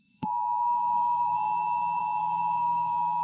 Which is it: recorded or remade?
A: remade